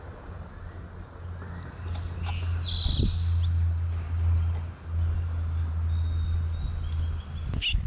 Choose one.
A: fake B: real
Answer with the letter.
B